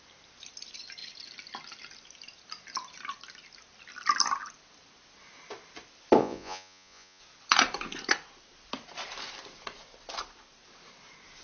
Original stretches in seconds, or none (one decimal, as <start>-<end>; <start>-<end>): 0.0-6.2; 7.2-11.4